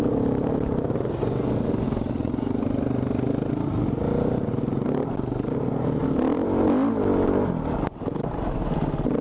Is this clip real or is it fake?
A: real